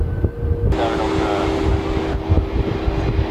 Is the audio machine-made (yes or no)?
no